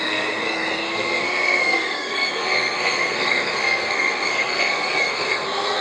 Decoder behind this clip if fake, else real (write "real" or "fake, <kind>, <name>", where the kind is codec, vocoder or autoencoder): fake, codec, SNAC